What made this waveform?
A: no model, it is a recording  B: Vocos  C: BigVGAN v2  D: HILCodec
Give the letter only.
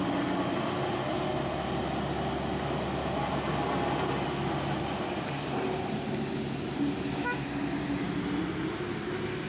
A